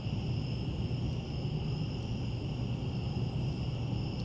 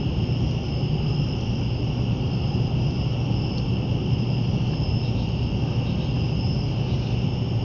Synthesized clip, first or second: first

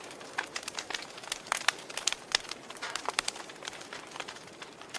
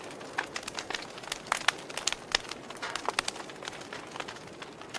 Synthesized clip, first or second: first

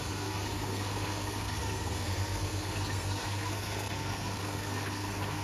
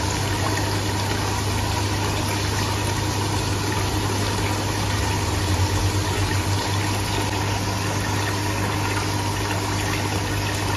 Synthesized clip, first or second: first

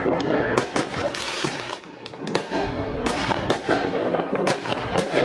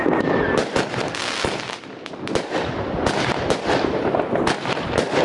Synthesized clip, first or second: first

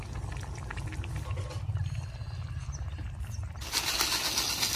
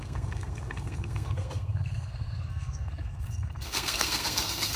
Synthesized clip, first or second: second